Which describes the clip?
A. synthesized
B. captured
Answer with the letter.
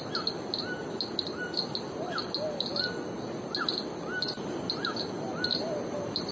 B